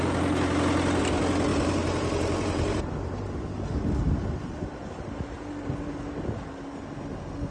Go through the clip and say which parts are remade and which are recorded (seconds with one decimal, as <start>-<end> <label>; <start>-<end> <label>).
0.0-1.5 recorded; 1.5-3.3 remade; 3.3-7.5 recorded